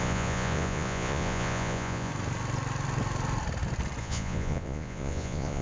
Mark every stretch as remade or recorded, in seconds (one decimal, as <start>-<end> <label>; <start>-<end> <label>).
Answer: 0.0-2.1 remade; 2.1-4.0 recorded; 4.0-5.6 remade